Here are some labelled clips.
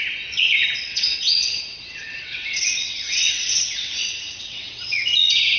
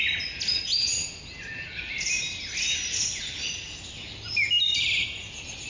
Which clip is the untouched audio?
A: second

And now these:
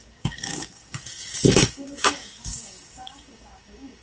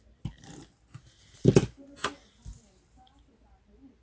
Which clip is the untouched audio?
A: second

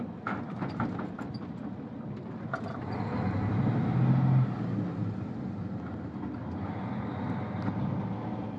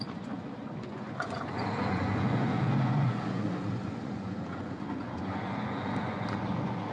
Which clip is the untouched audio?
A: first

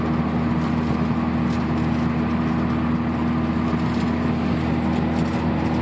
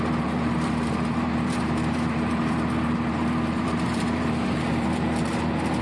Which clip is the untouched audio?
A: first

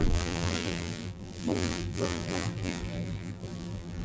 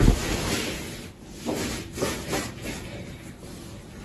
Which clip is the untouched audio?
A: second